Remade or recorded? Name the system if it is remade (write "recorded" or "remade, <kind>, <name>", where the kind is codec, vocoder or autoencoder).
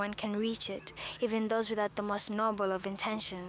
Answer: remade, autoencoder, DAC-VAE